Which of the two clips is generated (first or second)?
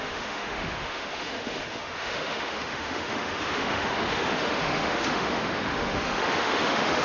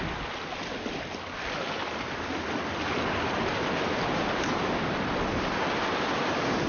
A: first